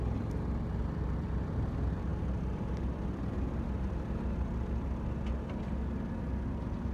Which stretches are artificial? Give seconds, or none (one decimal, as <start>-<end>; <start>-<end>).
none